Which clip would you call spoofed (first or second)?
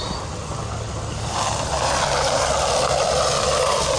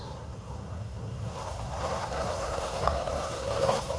second